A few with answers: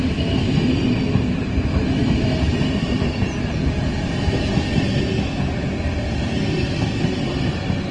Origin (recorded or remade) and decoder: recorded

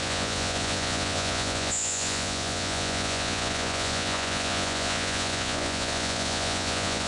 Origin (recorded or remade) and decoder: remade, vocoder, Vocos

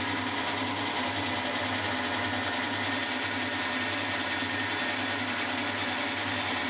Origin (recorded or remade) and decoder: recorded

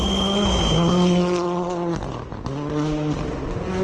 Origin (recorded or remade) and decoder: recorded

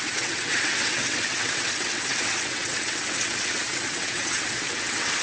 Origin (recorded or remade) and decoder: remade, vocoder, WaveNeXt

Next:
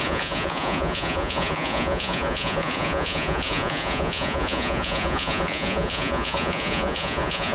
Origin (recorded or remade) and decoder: remade, vocoder, Vocos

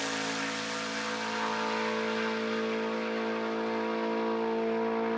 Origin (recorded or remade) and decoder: recorded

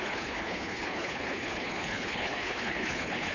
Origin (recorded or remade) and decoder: remade, codec, HILCodec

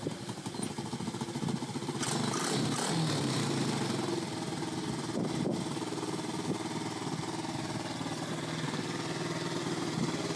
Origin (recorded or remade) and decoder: recorded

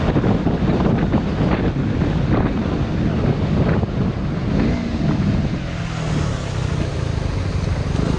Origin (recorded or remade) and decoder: recorded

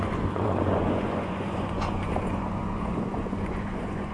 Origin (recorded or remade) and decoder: remade, vocoder, Vocos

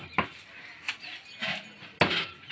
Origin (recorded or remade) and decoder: recorded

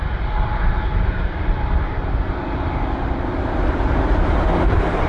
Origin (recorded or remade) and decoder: recorded